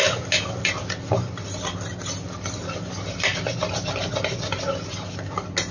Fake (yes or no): no